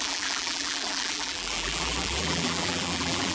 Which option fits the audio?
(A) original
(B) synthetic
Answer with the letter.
B